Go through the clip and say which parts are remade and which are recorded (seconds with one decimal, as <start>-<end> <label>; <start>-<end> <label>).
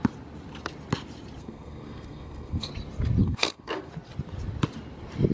0.0-1.4 recorded; 1.4-2.7 remade; 2.7-3.2 recorded; 3.2-3.9 remade; 3.9-5.3 recorded